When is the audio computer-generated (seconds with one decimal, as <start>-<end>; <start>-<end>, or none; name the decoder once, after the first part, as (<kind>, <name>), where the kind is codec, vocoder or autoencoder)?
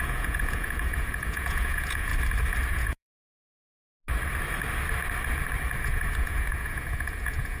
0.0-2.1 (vocoder, Vocos); 2.7-3.9; 5.8-7.6